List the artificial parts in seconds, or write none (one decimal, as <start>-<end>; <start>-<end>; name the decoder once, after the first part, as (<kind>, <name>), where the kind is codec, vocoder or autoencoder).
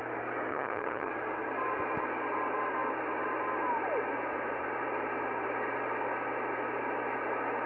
0.5-1.1 (vocoder, HiFi-GAN)